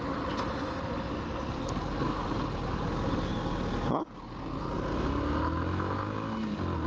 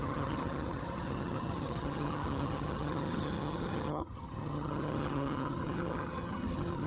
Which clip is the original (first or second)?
first